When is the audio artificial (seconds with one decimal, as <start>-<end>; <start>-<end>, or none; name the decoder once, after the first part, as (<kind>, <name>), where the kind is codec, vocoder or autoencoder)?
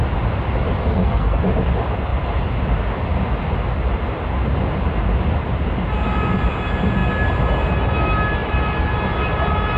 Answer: 0.8-1.4 (codec, SNAC)